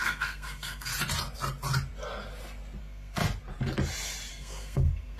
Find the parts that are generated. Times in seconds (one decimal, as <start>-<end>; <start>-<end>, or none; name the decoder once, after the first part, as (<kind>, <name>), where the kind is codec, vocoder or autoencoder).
0.0-0.9 (codec, SNAC); 2.8-3.2; 4.3-5.2